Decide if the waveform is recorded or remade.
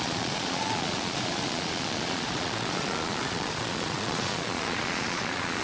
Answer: remade